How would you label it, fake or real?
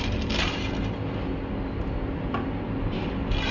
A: real